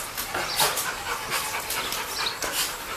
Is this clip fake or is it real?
real